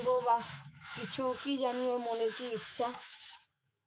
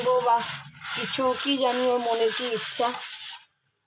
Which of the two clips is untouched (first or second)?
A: second